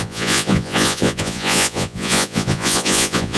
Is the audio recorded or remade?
remade